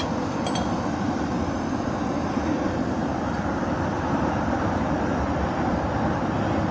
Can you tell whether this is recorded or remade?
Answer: recorded